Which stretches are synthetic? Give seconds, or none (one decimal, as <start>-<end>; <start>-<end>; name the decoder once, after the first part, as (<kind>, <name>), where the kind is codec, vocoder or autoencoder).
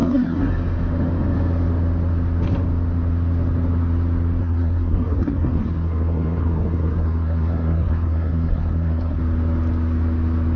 0.0-0.5 (codec, SNAC); 4.4-9.2